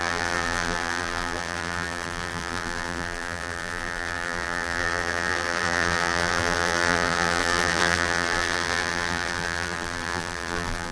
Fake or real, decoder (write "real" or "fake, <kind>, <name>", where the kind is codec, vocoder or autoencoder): fake, vocoder, BigVGAN v2